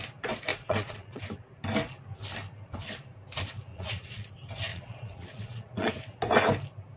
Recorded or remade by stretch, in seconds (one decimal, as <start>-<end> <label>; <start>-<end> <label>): 0.0-0.5 recorded; 0.5-1.2 remade; 1.2-3.7 recorded; 3.7-4.3 remade; 4.3-4.7 recorded; 4.7-5.9 remade; 5.9-7.0 recorded